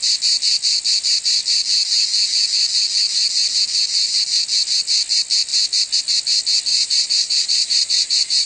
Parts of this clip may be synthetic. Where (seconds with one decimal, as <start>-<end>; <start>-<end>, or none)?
6.7-8.5